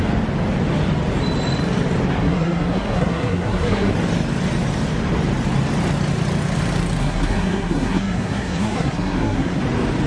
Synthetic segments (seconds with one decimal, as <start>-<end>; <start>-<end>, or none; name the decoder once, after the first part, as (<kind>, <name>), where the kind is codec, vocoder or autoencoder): 2.2-3.9 (codec, SNAC); 7.0-9.6